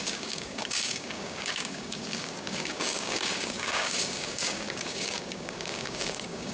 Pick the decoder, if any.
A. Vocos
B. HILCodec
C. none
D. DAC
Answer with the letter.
D